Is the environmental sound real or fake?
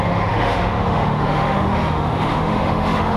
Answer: fake